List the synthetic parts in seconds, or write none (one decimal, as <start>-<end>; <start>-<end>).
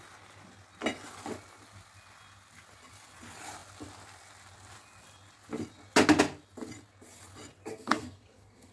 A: 7.7-8.7